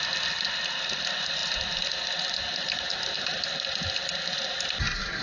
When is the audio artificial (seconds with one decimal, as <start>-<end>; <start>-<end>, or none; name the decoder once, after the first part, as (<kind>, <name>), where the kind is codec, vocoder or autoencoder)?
none